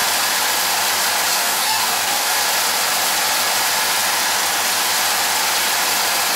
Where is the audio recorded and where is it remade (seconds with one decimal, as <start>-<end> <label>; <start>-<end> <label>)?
0.0-1.3 recorded; 1.3-2.4 remade; 2.4-6.4 recorded

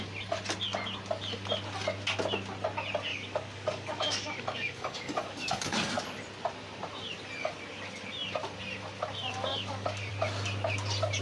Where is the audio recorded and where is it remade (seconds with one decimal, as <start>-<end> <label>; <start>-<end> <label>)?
0.0-3.1 recorded; 3.1-6.0 remade; 6.0-9.5 recorded; 9.5-10.1 remade; 10.1-11.2 recorded

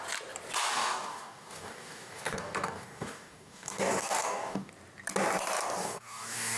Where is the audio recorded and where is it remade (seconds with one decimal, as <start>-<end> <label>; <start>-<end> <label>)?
0.0-0.7 recorded; 0.7-4.7 remade; 4.7-5.8 recorded; 5.8-6.6 remade

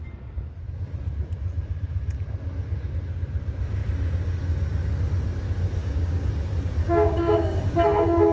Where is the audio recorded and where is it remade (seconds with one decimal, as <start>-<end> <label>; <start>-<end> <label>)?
0.0-5.8 recorded; 5.8-6.3 remade; 6.3-6.8 recorded; 6.8-7.6 remade; 7.6-8.3 recorded

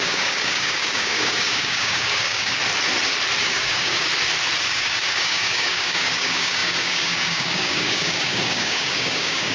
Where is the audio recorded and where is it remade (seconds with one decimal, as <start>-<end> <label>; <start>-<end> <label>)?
0.0-2.6 remade; 2.6-3.4 recorded; 3.4-4.1 remade; 4.1-4.6 recorded; 4.6-9.5 remade